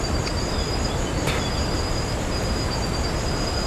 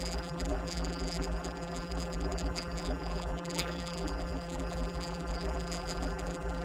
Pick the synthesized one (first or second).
second